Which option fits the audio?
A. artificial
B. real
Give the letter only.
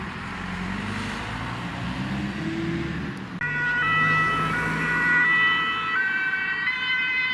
B